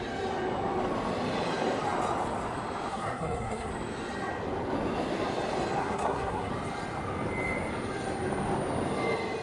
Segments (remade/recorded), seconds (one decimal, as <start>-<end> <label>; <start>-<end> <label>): 0.0-2.9 recorded; 2.9-3.7 remade; 3.7-5.8 recorded; 5.8-6.5 remade; 6.5-9.4 recorded

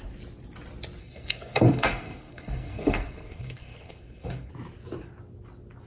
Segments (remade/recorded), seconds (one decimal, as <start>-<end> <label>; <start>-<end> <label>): 0.0-1.0 recorded; 1.0-4.5 remade; 4.5-5.9 recorded